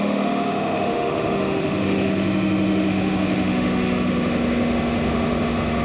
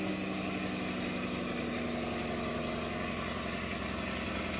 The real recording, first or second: second